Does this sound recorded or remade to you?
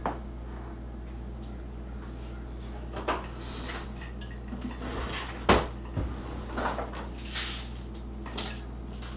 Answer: recorded